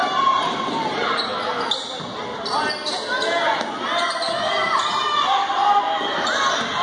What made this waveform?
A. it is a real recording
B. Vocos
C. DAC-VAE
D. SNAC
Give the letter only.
A